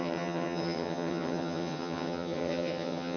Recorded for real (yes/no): no